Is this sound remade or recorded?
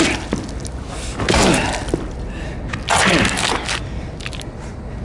recorded